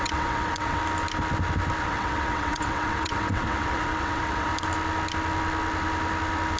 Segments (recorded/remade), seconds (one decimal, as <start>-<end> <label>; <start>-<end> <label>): 0.0-0.8 remade; 0.8-1.8 recorded; 1.8-4.5 remade; 4.5-6.6 recorded